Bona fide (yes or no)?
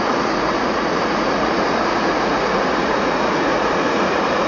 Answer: no